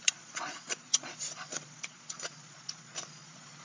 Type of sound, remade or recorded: remade